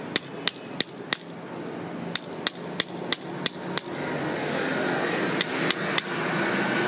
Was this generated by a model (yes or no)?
no